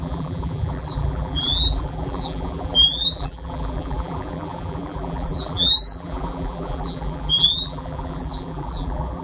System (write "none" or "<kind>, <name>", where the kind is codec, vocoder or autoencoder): vocoder, BigVGAN v2